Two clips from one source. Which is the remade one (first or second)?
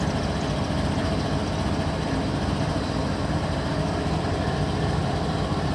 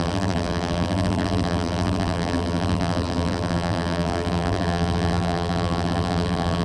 second